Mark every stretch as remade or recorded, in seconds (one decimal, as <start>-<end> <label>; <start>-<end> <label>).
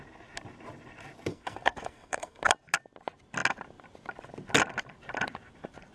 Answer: 0.0-1.3 recorded; 1.3-2.4 remade; 2.4-5.9 recorded